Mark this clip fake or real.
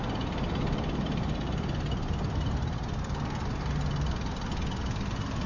real